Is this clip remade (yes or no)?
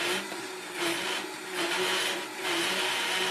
no